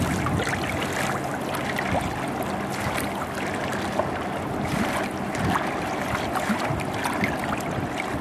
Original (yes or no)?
yes